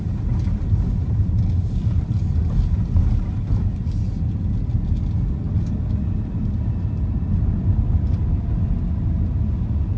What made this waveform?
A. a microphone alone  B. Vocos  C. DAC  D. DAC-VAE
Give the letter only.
A